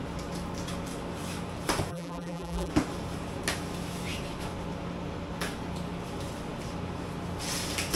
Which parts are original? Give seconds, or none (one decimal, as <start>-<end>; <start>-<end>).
0.0-1.9; 2.7-7.9